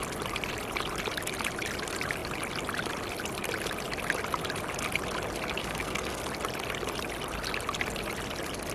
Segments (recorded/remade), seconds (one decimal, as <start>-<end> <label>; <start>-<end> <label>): 0.0-5.6 recorded; 5.6-6.2 remade; 6.2-8.7 recorded